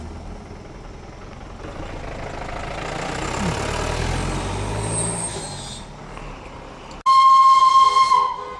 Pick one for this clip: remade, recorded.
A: recorded